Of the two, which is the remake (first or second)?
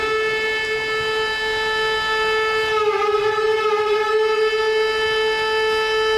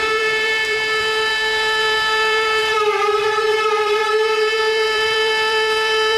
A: second